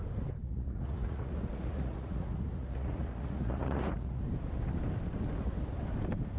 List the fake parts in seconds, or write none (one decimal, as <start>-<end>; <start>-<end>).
0.4-4.2